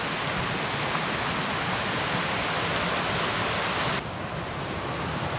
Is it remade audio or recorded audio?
recorded